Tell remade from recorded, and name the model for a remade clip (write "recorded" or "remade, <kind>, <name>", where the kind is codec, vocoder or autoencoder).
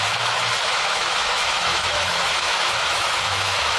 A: remade, autoencoder, DAC-VAE